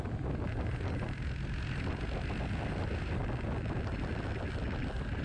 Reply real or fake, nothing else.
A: real